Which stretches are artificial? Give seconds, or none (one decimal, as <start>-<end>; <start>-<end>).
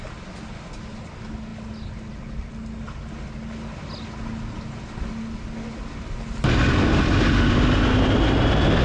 none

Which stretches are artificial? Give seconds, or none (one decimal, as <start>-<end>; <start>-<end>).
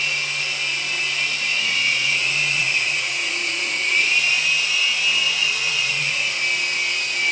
1.5-4.1; 5.4-6.4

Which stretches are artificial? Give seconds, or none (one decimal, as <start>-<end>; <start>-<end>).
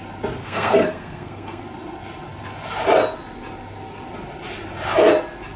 0.4-1.6